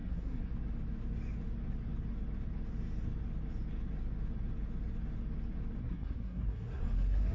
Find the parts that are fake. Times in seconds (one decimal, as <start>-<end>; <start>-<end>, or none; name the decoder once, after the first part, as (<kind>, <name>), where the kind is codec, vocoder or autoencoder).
0.0-0.5 (codec, SNAC); 5.8-6.8